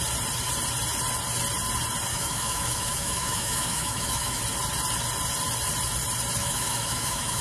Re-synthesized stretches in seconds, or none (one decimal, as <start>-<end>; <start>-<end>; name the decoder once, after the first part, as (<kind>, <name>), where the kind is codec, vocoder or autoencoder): 2.1-4.4 (autoencoder, DAC-VAE); 6.4-7.4